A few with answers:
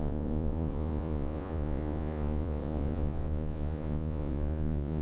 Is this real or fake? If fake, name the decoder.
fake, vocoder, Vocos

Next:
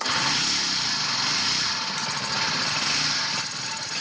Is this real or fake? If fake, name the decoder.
real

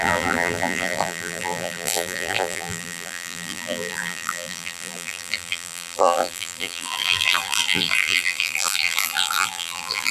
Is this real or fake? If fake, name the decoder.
fake, vocoder, BigVGAN v2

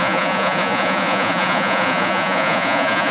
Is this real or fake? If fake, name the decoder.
fake, vocoder, Vocos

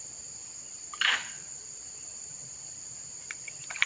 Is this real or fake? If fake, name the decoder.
fake, vocoder, BigVGAN v2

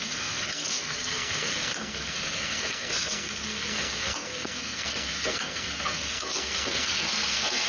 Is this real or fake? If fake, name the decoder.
fake, codec, SNAC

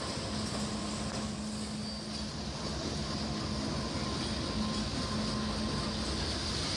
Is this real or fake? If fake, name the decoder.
real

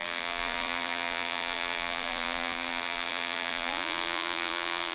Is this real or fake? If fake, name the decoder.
fake, vocoder, BigVGAN v2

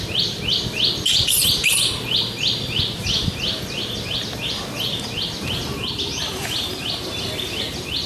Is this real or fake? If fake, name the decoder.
real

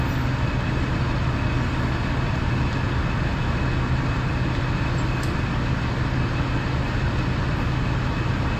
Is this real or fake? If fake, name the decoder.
real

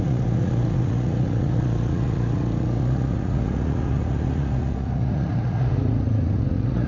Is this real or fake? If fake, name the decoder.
fake, vocoder, Vocos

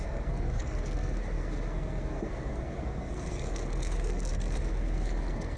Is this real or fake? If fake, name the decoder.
fake, codec, SNAC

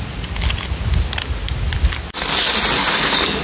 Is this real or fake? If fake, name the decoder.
real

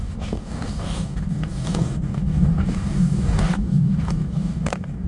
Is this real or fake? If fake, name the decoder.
fake, codec, DAC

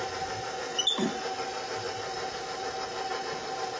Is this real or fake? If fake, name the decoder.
real